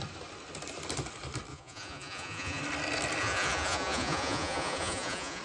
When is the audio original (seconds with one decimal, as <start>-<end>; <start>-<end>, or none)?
0.0-1.5; 2.6-3.2